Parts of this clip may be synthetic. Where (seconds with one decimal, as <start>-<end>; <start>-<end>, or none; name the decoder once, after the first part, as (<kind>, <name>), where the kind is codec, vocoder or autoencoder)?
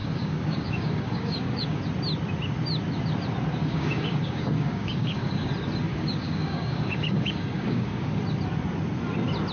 0.0-1.8 (codec, DAC); 3.6-5.5; 5.9-8.2